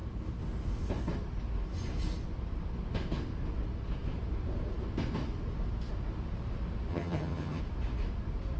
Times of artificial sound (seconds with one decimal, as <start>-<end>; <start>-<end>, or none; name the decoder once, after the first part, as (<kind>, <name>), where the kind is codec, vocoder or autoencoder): 6.9-7.6 (vocoder, HiFi-GAN)